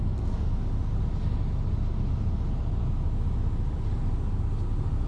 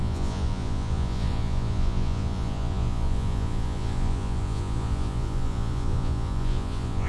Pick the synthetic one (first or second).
second